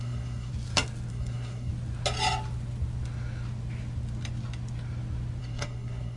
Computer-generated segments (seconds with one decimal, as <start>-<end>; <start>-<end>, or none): 0.0-0.5; 1.1-1.7; 5.4-6.2